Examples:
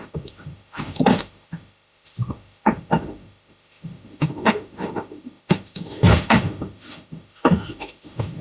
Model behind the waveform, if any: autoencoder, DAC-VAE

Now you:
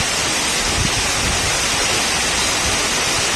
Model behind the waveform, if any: none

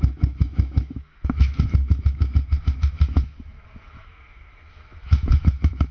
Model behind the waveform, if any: autoencoder, DAC-VAE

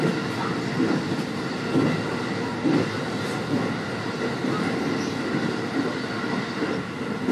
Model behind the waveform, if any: none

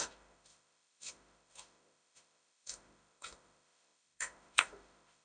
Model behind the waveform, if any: autoencoder, DAC-VAE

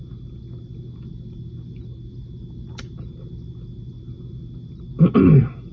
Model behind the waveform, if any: none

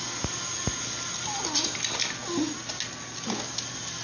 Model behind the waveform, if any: none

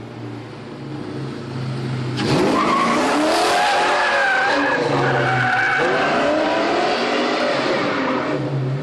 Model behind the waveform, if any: none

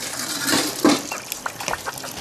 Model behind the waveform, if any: none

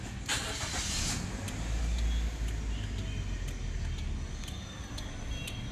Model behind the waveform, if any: none